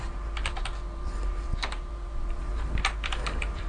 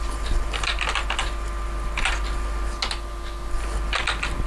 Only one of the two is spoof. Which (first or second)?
first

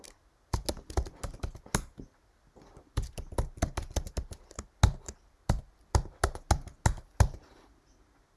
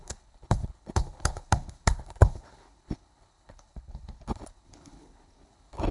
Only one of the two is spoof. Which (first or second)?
second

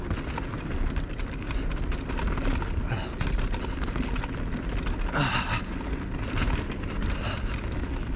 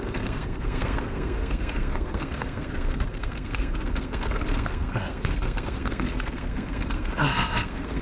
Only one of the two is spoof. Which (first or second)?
second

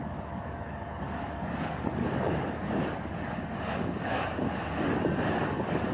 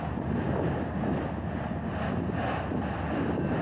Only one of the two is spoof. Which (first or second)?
first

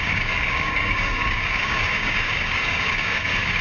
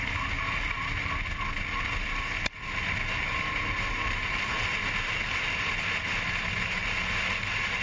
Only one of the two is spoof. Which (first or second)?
first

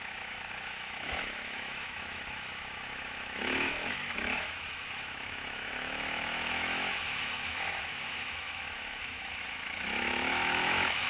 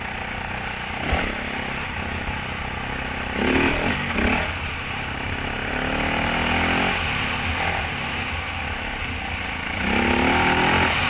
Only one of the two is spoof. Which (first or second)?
first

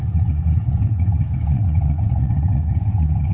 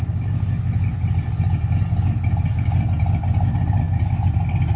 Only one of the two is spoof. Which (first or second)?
first